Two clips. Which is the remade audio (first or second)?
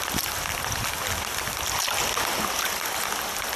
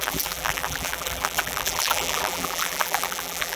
second